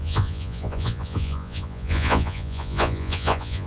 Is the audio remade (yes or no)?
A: yes